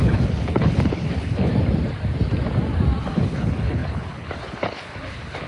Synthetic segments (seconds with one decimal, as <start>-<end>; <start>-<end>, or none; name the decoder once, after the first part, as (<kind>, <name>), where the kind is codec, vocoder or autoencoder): 0.0-1.5 (codec, HILCodec); 3.0-5.5